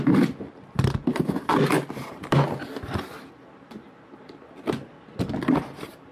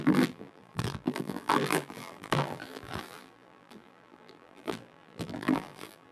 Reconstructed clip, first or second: second